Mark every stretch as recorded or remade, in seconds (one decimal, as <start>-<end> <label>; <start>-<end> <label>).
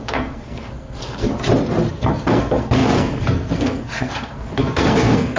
0.0-1.3 remade; 1.3-1.9 recorded; 1.9-5.4 remade